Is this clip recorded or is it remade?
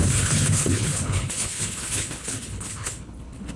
remade